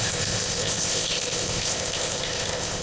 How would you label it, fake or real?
fake